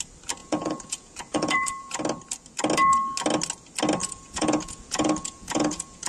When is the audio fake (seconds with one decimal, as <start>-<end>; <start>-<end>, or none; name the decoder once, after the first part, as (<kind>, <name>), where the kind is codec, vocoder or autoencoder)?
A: 0.4-2.0 (vocoder, Vocos); 4.0-6.1